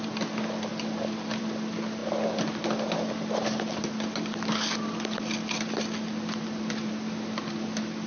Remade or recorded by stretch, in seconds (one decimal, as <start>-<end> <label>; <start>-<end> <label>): 0.0-8.1 recorded